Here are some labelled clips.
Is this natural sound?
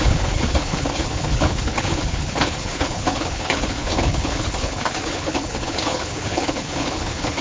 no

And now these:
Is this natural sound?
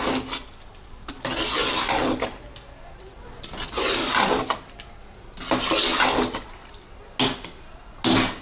yes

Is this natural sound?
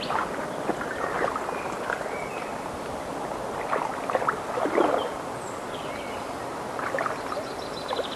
yes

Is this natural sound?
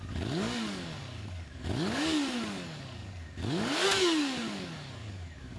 no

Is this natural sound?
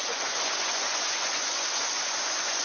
no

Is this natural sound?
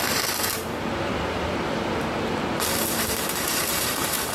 no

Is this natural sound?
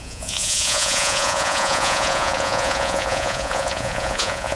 no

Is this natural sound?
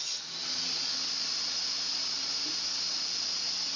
yes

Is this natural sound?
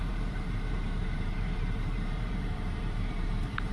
no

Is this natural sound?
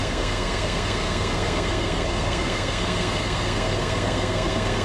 no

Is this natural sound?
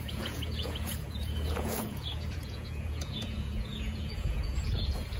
no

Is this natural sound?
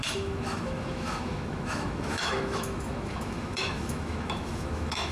no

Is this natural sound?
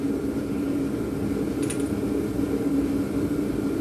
yes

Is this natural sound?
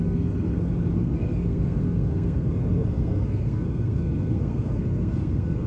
no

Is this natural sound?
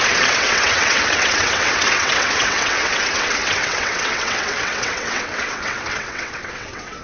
no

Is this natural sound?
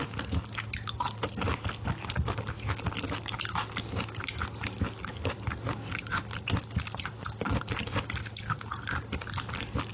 yes